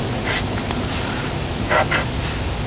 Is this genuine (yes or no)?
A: yes